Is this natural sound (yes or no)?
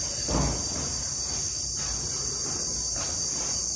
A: yes